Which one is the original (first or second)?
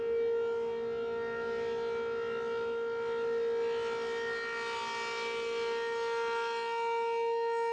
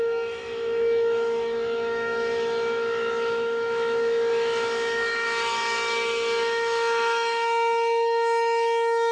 first